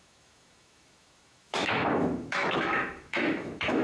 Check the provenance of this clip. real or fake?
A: fake